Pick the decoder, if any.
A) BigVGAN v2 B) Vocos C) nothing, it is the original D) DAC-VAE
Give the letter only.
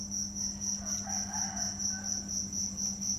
C